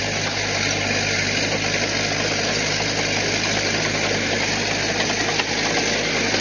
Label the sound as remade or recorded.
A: recorded